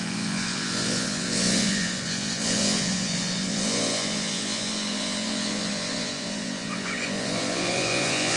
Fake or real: fake